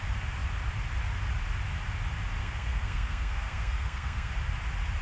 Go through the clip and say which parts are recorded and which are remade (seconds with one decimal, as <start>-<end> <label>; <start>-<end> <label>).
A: 0.0-2.4 recorded; 2.4-4.3 remade; 4.3-5.0 recorded